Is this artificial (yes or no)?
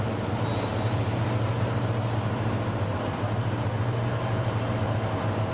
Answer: yes